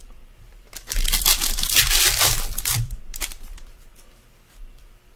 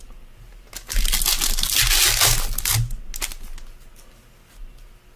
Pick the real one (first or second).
second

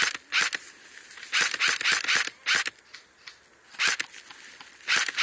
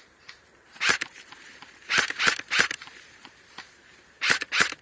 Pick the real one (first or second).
first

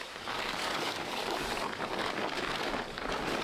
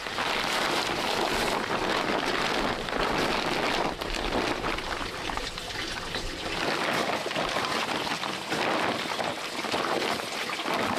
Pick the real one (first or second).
second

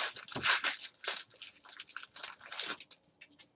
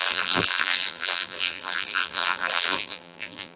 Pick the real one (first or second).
first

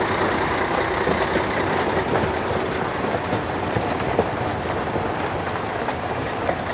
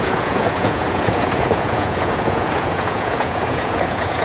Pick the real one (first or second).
first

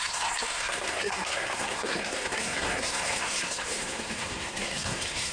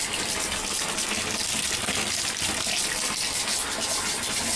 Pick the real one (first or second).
second